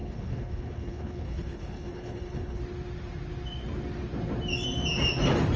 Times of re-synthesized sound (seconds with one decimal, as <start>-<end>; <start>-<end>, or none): 0.0-2.6